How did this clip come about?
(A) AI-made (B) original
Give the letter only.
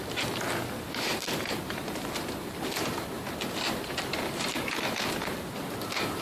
A